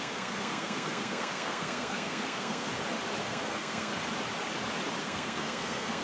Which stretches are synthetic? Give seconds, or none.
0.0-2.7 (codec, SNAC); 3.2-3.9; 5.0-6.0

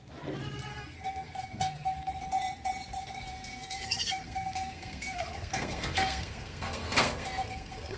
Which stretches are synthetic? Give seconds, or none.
0.7-2.2 (codec, SNAC); 3.0-8.0

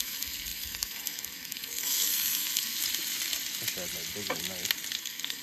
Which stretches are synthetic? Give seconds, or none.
0.0-2.8 (codec, SNAC); 5.0-5.4

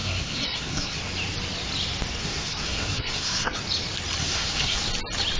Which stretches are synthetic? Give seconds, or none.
0.0-1.0 (codec, SNAC); 2.2-3.6; 4.2-4.9

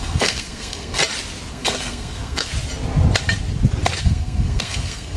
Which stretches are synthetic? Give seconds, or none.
0.0-1.0 (codec, SNAC); 1.5-2.5; 4.0-5.2